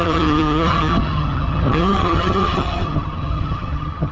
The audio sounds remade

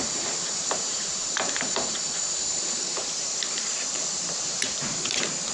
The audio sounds remade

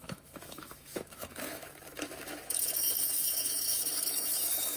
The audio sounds remade